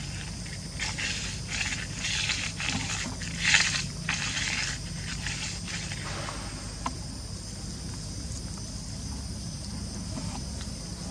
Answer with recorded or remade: recorded